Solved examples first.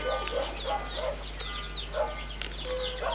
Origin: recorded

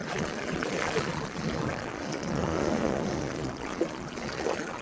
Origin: remade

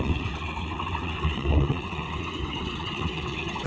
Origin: remade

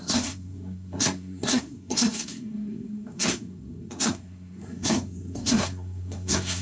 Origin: remade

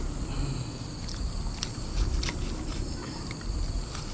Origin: recorded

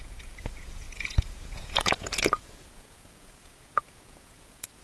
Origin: remade